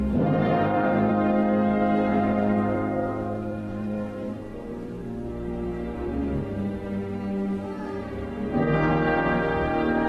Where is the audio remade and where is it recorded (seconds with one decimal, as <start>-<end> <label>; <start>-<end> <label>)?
0.0-0.4 recorded; 0.4-1.1 remade; 1.1-2.1 recorded; 2.1-5.3 remade; 5.3-10.1 recorded